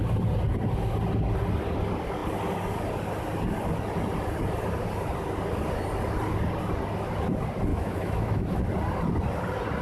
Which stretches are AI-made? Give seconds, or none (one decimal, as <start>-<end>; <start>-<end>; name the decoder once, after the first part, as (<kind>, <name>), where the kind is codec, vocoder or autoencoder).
7.7-8.6 (autoencoder, DAC-VAE)